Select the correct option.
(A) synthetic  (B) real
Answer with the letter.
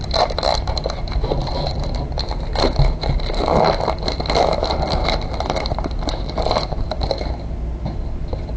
B